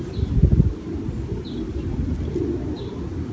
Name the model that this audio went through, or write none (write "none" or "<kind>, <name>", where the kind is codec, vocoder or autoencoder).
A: none